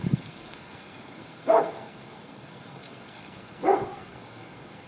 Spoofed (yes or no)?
yes